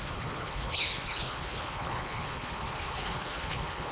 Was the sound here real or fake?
fake